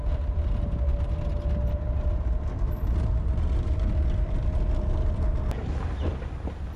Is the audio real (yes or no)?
yes